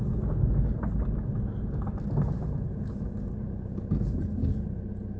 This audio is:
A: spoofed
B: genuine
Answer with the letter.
B